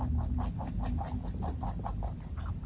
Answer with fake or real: real